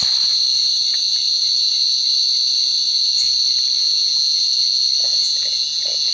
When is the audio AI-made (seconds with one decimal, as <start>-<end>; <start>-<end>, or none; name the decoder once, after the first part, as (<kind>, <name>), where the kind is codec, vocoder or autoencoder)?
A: 3.8-4.4 (vocoder, Vocos); 5.0-6.1